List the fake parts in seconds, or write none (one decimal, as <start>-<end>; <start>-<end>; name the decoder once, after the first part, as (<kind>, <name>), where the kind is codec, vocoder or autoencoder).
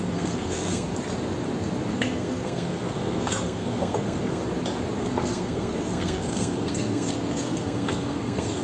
0.0-0.9 (codec, SNAC); 1.9-4.4; 5.0-8.6